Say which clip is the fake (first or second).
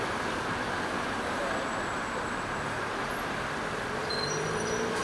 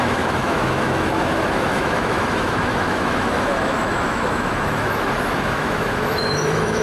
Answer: second